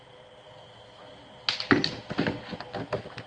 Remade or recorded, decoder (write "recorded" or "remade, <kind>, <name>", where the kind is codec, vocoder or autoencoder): recorded